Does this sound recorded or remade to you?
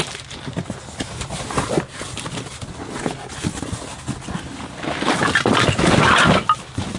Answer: recorded